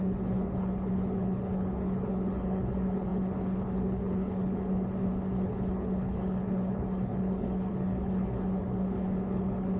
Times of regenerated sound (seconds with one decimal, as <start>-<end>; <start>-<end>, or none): 0.0-9.8